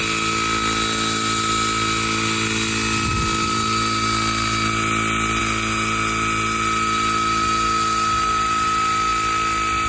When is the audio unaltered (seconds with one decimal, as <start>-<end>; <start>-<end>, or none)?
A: 0.0-9.9